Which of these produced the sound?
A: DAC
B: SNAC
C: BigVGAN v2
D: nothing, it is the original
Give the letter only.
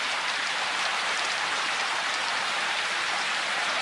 C